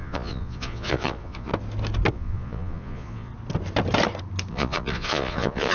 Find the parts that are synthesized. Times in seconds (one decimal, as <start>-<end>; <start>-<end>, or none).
0.0-1.5; 2.1-3.3; 4.5-5.7

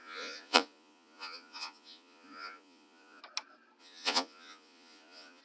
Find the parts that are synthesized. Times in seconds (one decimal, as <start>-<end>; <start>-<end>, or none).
0.0-3.2; 3.8-5.4

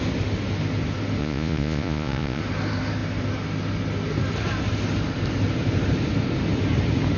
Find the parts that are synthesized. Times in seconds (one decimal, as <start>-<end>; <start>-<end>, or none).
1.2-2.4

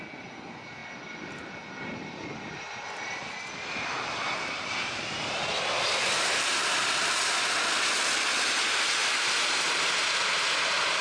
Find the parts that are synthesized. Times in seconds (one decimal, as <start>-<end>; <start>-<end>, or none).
none

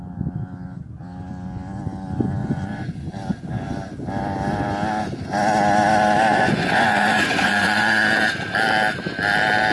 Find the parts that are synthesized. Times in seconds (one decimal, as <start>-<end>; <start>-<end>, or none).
2.4-3.1; 6.3-7.9